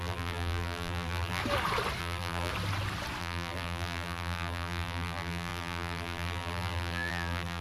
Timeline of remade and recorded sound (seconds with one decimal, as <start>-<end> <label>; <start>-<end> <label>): 0.0-1.4 remade; 1.4-2.0 recorded; 2.0-2.5 remade; 2.5-3.2 recorded; 3.2-7.6 remade